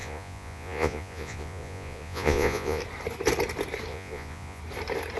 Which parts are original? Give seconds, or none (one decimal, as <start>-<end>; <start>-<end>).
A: 2.8-3.9; 4.6-5.2